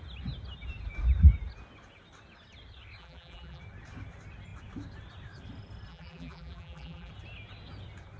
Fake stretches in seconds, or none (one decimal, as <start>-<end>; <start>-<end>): 3.0-3.6; 5.9-7.1